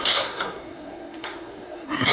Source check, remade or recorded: remade